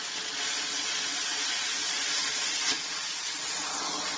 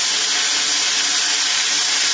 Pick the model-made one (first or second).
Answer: first